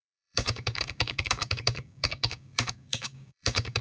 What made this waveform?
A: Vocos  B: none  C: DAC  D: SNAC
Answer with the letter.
C